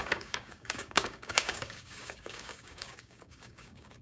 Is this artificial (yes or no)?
yes